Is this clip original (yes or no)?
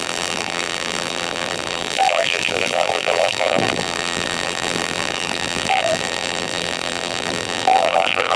no